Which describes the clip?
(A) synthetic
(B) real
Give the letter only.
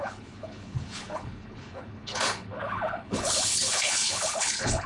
A